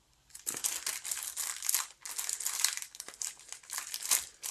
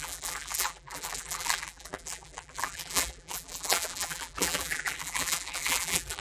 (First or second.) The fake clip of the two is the second